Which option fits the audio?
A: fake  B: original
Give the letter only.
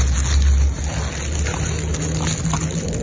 B